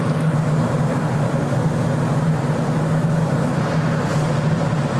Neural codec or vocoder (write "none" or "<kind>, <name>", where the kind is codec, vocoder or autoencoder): none